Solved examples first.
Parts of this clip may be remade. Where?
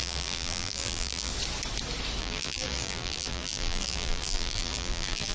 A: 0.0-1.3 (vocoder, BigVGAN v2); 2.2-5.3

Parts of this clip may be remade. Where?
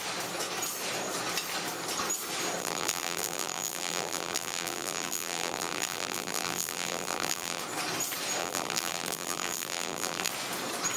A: 2.6-7.6 (vocoder, BigVGAN v2); 8.4-10.3